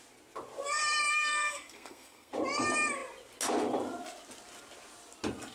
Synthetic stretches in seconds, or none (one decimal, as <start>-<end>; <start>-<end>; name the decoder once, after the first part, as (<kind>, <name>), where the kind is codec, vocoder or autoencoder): 1.1-2.3 (codec, SNAC)

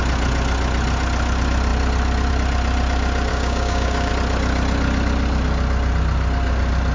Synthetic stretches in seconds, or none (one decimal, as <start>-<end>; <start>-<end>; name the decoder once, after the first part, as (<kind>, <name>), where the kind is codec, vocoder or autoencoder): 3.3-4.1 (codec, DAC)

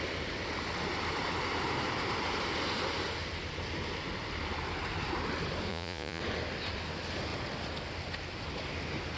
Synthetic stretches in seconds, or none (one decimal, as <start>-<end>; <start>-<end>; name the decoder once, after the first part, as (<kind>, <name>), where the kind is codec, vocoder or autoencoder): 5.7-6.2 (vocoder, Vocos)